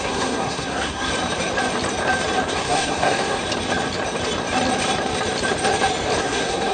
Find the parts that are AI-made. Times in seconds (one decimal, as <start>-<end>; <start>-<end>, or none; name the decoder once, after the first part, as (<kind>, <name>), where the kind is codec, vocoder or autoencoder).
0.0-1.1 (codec, SNAC); 2.5-3.4; 6.2-6.7